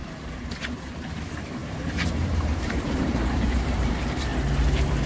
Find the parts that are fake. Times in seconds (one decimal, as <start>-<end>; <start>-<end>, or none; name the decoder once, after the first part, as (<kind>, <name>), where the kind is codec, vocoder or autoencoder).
0.0-1.2 (vocoder, BigVGAN v2); 1.6-3.9